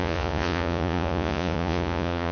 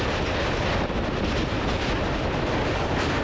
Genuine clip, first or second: second